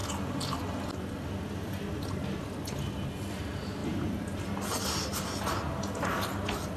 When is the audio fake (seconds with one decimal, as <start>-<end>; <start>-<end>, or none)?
none